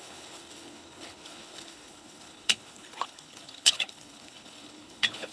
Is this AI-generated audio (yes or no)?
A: yes